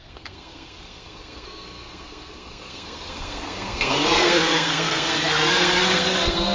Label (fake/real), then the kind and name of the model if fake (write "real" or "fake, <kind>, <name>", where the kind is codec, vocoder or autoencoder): fake, codec, SNAC